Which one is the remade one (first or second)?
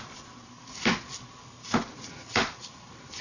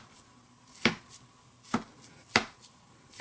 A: first